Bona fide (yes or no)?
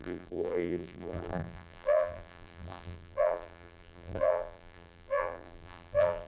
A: no